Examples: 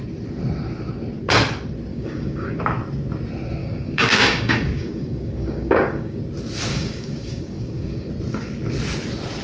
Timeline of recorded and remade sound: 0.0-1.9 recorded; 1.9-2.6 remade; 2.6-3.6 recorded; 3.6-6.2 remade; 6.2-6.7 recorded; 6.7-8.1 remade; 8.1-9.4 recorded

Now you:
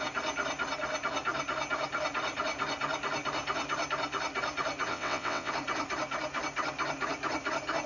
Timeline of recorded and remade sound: 0.0-4.9 recorded; 4.9-5.5 remade; 5.5-7.9 recorded

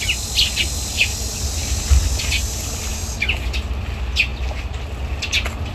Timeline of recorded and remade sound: 0.0-5.7 recorded

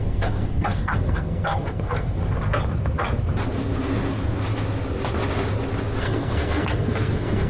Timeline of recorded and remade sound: 0.0-2.2 remade; 2.2-6.0 recorded; 6.0-7.5 remade

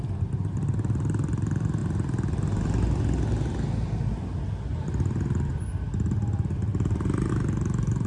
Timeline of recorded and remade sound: 0.0-4.7 recorded; 4.7-5.5 remade; 5.5-6.7 recorded; 6.7-7.3 remade; 7.3-8.1 recorded